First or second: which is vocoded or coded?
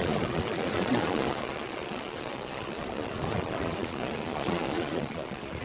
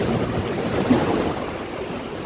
first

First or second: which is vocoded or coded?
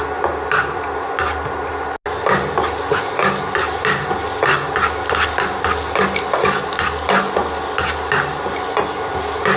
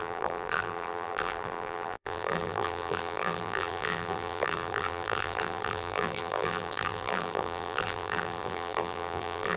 second